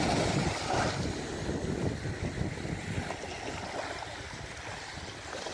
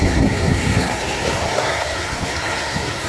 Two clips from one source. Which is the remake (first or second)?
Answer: second